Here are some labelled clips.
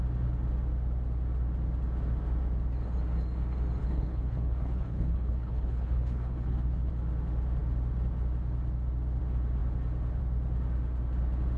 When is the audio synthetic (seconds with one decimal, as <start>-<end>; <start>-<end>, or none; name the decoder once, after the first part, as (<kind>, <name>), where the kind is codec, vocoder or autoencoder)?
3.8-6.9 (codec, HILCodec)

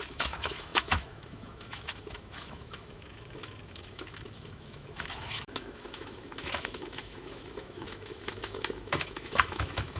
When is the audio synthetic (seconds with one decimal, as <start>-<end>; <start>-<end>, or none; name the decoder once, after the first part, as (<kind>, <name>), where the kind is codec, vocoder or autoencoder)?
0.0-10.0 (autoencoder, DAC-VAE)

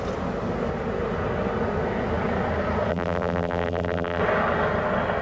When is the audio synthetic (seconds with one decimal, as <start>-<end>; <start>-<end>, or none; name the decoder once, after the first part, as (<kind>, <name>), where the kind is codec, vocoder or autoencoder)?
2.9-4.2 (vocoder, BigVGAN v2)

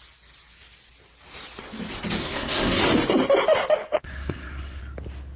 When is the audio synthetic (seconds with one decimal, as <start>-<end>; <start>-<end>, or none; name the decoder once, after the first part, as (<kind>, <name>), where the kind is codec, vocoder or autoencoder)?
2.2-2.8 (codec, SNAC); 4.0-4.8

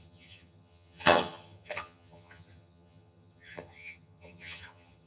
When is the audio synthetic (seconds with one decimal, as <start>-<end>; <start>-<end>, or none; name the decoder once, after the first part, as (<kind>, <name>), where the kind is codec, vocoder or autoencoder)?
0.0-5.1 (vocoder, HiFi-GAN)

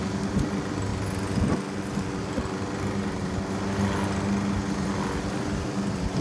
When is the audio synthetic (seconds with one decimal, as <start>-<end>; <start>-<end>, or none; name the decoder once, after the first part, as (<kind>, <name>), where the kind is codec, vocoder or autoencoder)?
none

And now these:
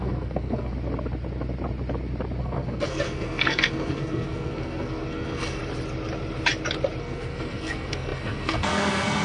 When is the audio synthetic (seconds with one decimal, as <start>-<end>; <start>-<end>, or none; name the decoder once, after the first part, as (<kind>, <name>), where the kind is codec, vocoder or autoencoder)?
0.0-0.7 (codec, SNAC); 2.4-5.6; 7.0-9.2